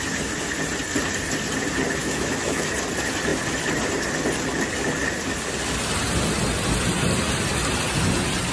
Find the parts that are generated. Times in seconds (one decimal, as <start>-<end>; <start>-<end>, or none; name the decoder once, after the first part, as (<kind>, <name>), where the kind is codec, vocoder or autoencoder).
2.0-2.7 (autoencoder, DAC-VAE)